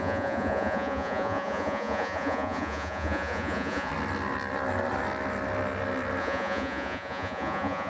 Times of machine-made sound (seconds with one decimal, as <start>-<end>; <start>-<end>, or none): 0.0-3.9; 6.2-7.9